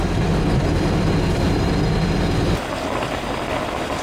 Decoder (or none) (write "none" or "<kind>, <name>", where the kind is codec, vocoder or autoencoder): none